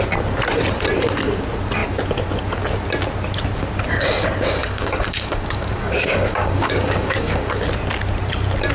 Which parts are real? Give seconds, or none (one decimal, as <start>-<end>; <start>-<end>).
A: 0.0-4.6; 7.6-8.7